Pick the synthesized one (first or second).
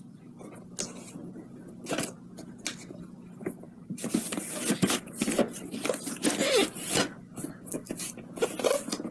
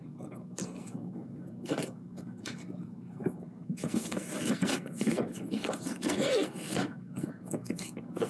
second